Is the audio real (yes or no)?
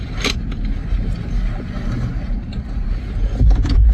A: no